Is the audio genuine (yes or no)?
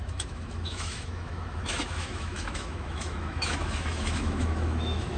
no